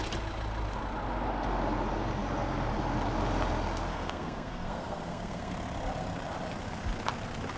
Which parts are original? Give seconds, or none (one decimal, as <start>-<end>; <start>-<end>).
0.0-3.9; 5.5-7.6